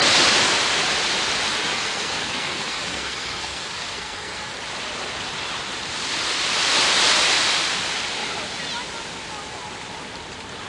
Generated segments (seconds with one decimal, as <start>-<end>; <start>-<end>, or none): 1.6-4.6